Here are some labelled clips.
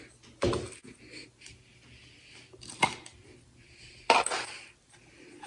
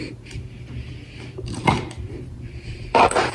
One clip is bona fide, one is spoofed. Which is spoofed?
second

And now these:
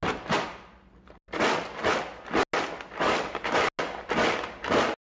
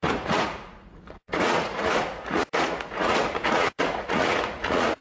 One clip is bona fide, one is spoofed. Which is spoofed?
second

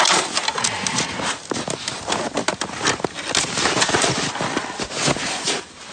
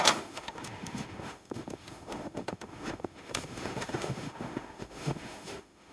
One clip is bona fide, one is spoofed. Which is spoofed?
second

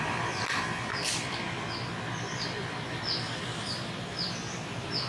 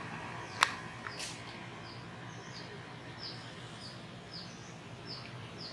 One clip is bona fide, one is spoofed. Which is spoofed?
first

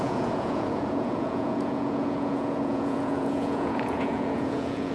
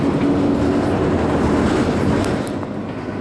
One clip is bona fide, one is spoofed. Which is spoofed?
first